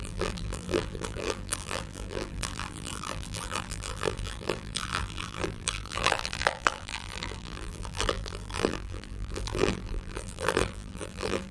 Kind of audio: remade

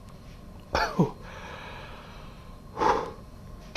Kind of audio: remade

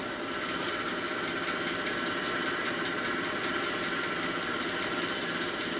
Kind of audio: recorded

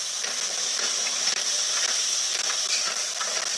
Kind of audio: recorded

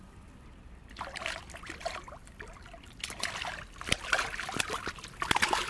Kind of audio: recorded